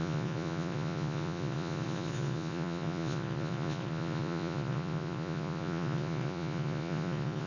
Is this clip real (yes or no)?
no